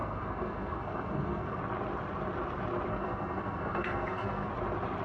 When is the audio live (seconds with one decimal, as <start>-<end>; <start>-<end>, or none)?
1.6-2.9; 4.5-5.0